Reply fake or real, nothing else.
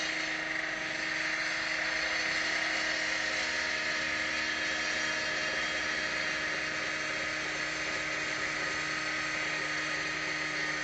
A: real